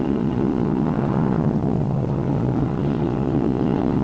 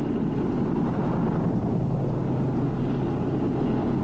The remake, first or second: first